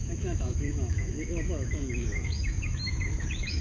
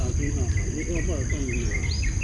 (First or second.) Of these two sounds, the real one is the second